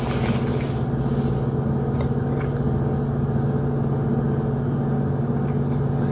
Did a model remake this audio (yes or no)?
no